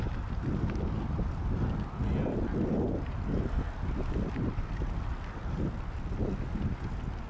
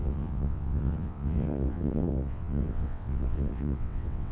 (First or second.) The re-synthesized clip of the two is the second